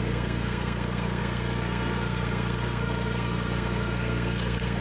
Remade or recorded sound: remade